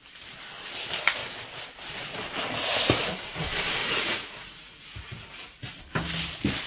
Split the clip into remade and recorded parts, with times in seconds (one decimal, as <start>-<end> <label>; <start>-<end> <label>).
0.0-3.8 recorded; 3.8-5.8 remade; 5.8-6.7 recorded